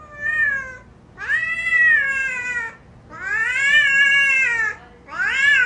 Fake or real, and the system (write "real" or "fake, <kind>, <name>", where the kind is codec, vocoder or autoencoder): real